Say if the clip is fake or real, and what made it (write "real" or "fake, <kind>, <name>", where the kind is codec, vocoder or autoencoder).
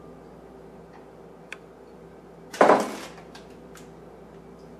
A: real